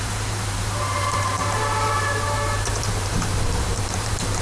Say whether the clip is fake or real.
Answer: fake